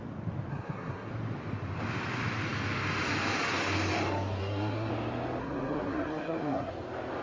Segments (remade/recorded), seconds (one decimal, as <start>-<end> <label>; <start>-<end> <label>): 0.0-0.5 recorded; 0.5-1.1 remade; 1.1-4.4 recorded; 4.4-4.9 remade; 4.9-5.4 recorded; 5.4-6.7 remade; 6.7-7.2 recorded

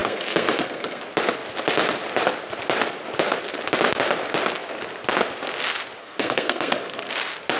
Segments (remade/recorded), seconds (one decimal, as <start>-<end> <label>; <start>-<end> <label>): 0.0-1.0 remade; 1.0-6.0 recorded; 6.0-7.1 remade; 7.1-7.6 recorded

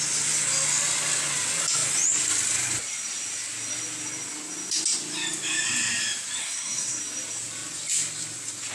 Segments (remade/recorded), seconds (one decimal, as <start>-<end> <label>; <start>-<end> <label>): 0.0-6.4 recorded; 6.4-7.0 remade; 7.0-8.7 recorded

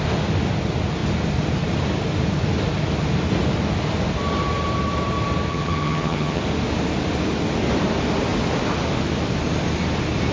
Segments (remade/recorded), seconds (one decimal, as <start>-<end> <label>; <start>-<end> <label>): 0.0-5.5 recorded; 5.5-6.4 remade; 6.4-10.3 recorded